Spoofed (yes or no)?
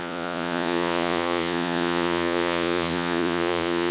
yes